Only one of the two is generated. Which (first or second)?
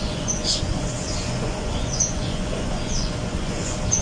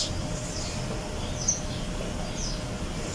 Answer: first